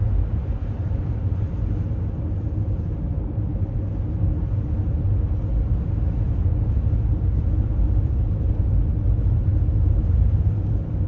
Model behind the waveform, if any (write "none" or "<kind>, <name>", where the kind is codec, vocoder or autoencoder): none